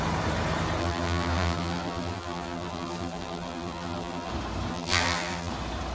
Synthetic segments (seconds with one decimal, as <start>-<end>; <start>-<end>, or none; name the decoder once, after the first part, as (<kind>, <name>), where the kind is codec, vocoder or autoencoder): 0.8-4.3 (vocoder, BigVGAN v2); 4.7-5.5